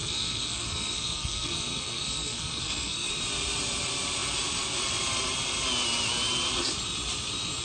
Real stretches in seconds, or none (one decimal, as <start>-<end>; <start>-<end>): 3.1-7.6